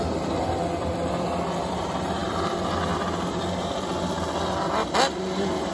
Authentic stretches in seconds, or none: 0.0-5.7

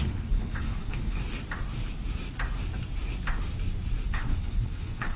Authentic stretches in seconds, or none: 1.2-4.1

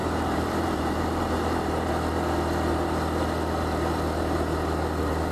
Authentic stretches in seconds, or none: 1.9-5.3

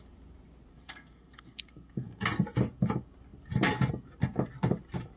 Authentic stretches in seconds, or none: 0.0-0.7; 2.2-5.2

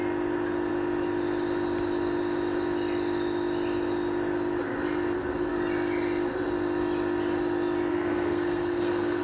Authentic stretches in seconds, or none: 0.0-7.9